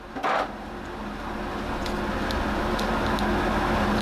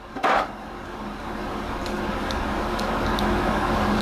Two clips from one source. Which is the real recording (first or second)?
first